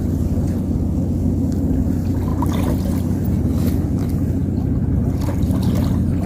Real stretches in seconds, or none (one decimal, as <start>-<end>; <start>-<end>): 0.0-6.3